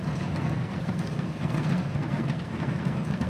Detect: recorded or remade remade